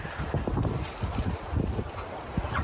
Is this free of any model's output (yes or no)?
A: no